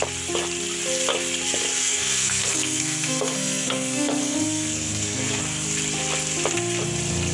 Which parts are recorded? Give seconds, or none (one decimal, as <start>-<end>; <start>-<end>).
0.0-1.8; 5.4-7.3